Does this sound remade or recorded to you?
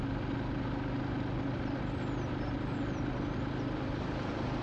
recorded